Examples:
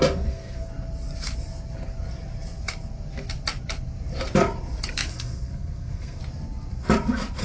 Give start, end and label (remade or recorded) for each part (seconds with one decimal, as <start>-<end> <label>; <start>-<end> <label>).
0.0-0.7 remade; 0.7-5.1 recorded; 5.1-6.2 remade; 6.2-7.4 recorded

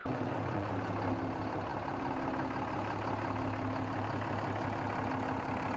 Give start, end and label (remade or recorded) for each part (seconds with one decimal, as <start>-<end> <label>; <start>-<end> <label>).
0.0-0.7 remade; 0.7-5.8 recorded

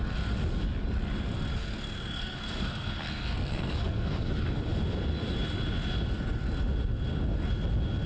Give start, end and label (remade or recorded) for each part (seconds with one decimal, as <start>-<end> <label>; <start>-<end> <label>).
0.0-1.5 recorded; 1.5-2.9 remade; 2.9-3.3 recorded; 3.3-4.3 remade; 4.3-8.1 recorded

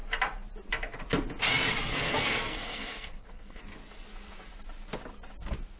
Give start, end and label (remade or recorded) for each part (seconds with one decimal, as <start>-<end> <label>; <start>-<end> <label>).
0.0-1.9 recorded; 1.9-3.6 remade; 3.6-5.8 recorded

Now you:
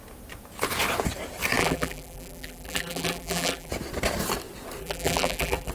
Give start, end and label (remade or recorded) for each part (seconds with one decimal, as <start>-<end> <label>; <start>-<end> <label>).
0.0-1.6 recorded; 1.6-3.7 remade; 3.7-4.8 recorded; 4.8-5.7 remade

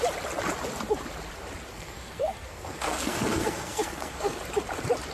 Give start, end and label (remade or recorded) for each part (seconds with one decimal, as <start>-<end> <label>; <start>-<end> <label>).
0.0-1.7 recorded; 1.7-4.4 remade; 4.4-5.1 recorded

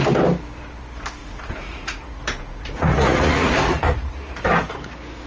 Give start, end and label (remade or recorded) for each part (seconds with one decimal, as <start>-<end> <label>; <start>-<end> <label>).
0.0-1.2 recorded; 1.2-4.4 remade; 4.4-5.3 recorded